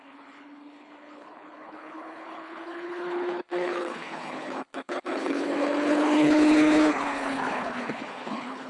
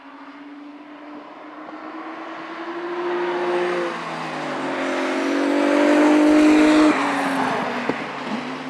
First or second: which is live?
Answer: second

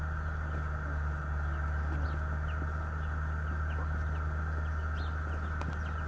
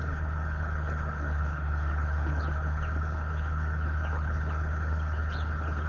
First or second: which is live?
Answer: first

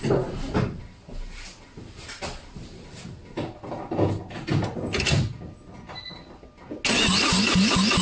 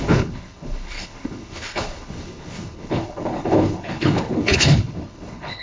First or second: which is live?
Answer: first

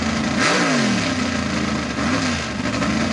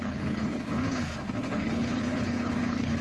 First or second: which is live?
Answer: first